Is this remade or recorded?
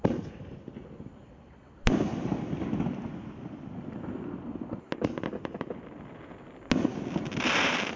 recorded